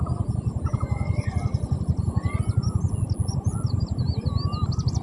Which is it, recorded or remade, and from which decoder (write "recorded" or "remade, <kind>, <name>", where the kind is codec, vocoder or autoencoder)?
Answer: recorded